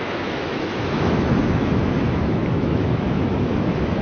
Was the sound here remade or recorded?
remade